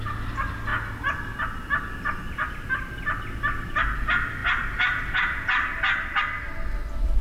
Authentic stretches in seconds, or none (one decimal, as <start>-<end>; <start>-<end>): 0.0-7.2